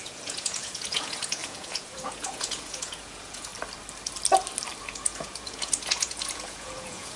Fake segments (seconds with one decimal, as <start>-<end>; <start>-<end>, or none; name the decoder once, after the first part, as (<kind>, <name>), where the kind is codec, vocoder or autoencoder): 0.0-3.5 (vocoder, Vocos); 4.8-7.2